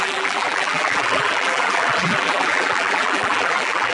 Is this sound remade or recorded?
remade